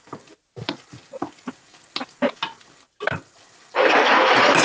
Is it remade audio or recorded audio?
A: recorded